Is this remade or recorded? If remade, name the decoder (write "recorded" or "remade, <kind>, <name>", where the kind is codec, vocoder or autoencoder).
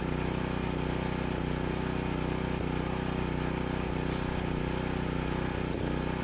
recorded